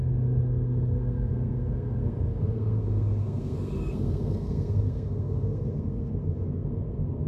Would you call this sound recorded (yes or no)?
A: no